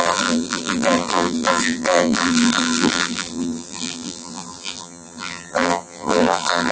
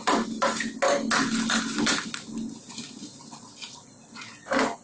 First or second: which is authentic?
second